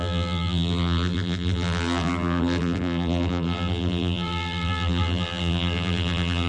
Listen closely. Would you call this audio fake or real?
fake